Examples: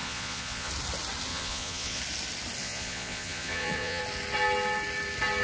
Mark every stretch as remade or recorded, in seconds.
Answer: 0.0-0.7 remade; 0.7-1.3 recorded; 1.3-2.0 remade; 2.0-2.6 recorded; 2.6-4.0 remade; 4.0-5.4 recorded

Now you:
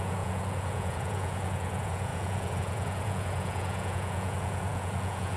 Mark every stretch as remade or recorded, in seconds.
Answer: 0.0-5.4 remade

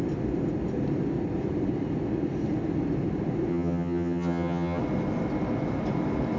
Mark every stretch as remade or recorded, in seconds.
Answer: 0.0-3.5 recorded; 3.5-4.8 remade; 4.8-6.4 recorded

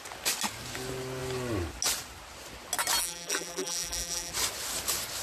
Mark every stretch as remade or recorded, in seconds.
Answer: 0.0-3.0 recorded; 3.0-4.3 remade; 4.3-5.2 recorded

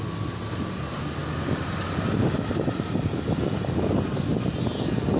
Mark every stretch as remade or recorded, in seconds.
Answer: 0.0-5.2 recorded

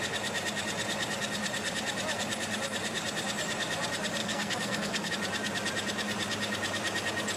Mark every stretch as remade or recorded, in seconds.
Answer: 0.0-4.2 recorded; 4.2-5.1 remade; 5.1-7.4 recorded

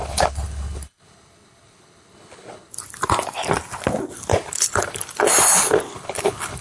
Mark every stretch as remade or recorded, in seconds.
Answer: 0.0-2.7 remade; 2.7-4.3 recorded; 4.3-5.0 remade; 5.0-5.9 recorded; 5.9-6.6 remade